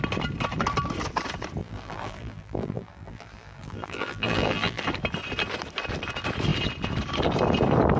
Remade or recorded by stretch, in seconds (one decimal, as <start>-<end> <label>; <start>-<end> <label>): 0.0-1.6 recorded; 1.6-4.8 remade; 4.8-8.0 recorded